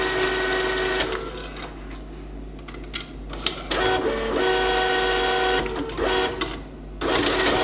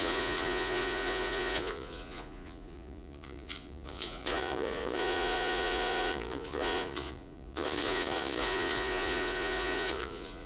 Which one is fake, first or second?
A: second